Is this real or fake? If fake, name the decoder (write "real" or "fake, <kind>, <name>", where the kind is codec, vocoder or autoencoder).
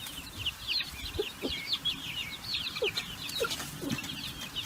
real